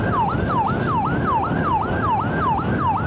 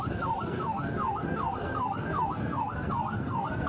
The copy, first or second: second